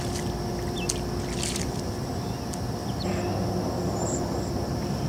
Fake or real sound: real